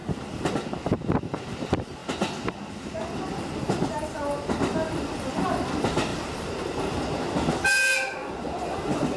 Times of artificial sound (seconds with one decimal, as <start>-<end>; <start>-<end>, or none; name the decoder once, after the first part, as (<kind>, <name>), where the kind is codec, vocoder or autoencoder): 0.0-0.5 (vocoder, BigVGAN v2); 6.1-7.0